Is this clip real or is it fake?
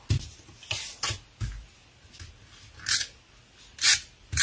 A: real